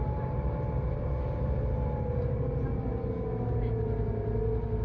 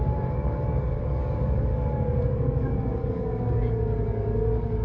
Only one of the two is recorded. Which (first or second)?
first